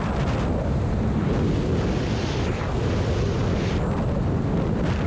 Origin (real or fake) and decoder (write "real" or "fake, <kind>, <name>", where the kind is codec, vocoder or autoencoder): real